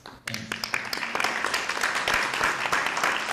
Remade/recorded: recorded